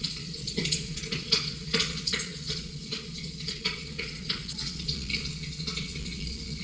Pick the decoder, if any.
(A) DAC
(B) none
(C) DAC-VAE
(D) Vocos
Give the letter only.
D